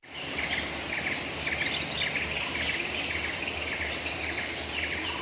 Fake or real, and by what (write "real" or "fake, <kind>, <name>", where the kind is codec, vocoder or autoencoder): real